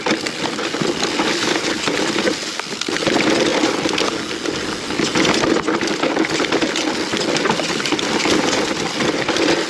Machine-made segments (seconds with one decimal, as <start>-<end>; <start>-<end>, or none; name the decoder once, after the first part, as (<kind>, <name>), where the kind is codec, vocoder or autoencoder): none